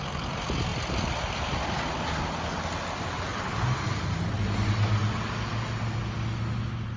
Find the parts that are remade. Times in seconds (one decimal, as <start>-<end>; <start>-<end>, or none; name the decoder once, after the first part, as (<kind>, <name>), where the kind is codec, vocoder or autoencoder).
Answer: none